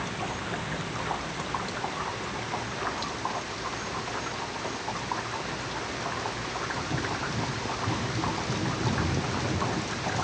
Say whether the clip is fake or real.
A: real